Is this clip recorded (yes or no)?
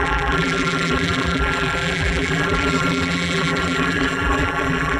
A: no